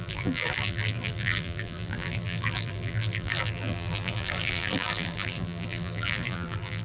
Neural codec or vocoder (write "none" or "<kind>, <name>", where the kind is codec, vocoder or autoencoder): vocoder, BigVGAN v2